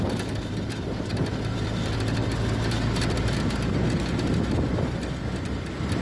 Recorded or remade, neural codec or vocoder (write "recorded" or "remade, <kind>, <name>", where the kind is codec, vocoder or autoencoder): remade, vocoder, BigVGAN v2